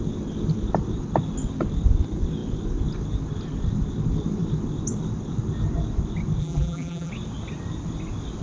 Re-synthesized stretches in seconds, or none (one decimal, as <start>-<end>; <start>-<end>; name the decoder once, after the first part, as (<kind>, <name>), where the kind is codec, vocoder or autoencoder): 6.4-7.1 (vocoder, BigVGAN v2)